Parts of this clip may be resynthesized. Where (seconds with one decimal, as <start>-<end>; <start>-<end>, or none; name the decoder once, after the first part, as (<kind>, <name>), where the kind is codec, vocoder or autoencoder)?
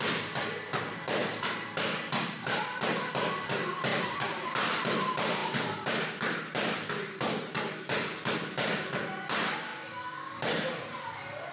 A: 1.2-2.6 (vocoder, BigVGAN v2); 3.9-4.7; 9.7-10.8